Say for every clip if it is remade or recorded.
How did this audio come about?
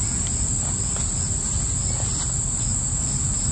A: recorded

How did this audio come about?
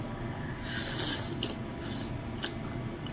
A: recorded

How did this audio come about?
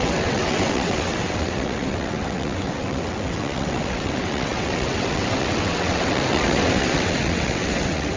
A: remade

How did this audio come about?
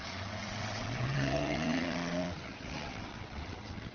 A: remade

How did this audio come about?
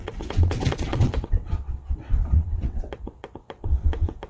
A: remade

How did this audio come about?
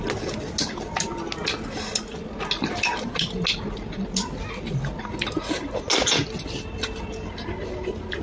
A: recorded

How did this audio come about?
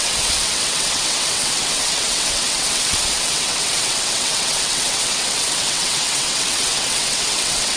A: remade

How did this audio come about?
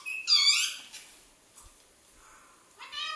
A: recorded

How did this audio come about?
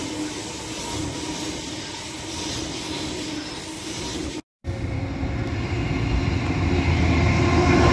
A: recorded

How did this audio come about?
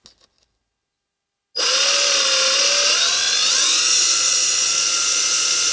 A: recorded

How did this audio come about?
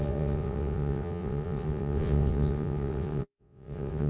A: remade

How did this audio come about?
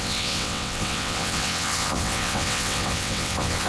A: remade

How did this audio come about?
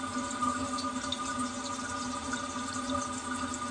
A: recorded